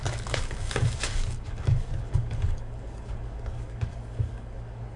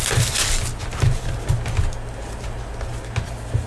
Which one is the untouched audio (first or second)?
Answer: second